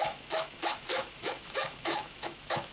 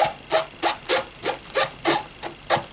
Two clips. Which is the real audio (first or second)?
second